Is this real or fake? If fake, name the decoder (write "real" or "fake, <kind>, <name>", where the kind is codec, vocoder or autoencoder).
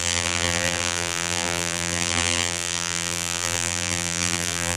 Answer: fake, vocoder, BigVGAN v2